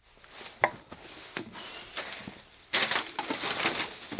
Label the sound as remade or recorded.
recorded